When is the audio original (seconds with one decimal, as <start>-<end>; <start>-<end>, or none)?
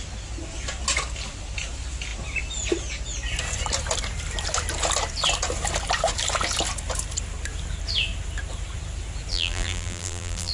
0.0-9.3